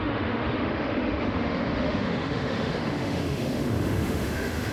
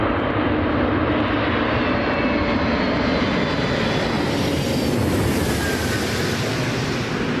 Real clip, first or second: second